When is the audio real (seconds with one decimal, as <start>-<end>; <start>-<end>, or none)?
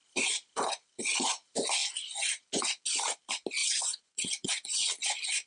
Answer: 0.0-3.6; 4.9-5.5